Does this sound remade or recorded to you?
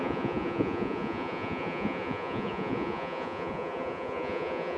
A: remade